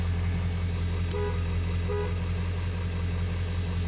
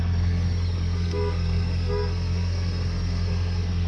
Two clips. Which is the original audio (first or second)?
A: first